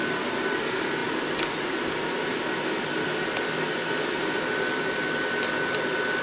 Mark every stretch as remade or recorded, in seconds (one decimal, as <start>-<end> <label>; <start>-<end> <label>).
0.0-6.2 recorded

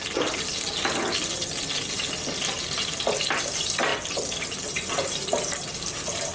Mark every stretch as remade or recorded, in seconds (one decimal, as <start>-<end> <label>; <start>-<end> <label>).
0.0-6.3 recorded

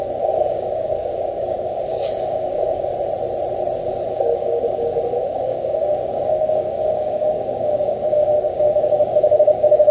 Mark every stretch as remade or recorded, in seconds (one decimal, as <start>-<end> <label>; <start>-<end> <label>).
0.0-2.9 remade; 2.9-4.1 recorded; 4.1-9.9 remade

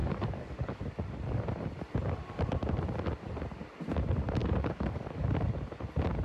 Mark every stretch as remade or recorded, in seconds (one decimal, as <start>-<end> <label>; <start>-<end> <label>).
0.0-0.8 remade; 0.8-4.4 recorded; 4.4-5.3 remade; 5.3-6.2 recorded

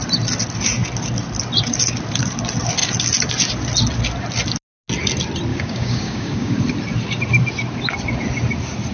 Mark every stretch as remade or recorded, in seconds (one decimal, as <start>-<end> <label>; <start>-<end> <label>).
0.0-5.5 recorded; 5.5-6.6 remade; 6.6-8.9 recorded

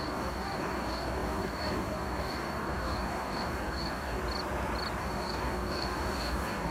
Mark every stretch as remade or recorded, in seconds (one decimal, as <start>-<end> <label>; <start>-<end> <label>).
0.0-4.2 remade; 4.2-5.0 recorded; 5.0-6.7 remade